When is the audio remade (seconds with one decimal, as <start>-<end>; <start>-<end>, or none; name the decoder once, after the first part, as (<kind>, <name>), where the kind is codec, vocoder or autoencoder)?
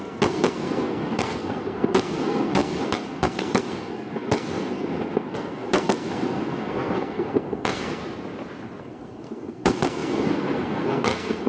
0.0-8.0 (codec, SNAC); 8.8-11.5